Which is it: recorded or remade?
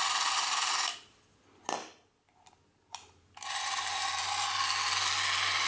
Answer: recorded